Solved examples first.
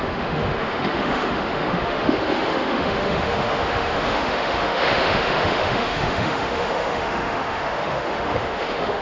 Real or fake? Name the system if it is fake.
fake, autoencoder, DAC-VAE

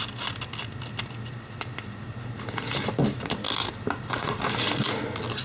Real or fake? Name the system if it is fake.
real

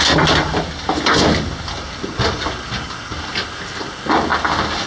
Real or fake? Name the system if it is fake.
real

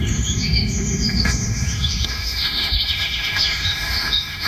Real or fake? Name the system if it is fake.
fake, autoencoder, DAC-VAE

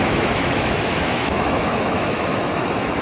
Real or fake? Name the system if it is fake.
fake, autoencoder, DAC-VAE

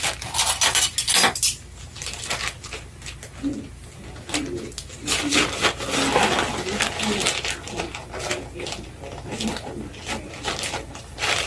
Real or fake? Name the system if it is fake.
real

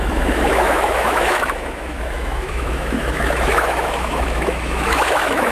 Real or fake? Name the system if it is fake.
fake, autoencoder, DAC-VAE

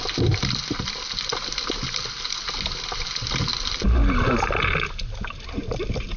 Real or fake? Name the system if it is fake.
real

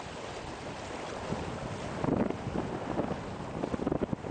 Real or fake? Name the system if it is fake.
real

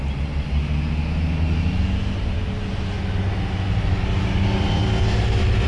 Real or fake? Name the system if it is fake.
real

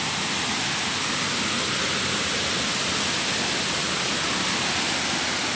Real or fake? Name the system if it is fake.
real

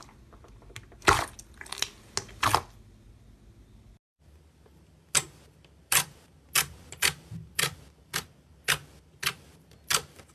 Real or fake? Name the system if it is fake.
real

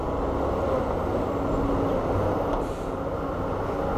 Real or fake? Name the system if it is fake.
real